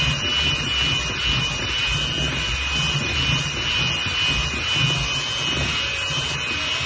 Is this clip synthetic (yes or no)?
no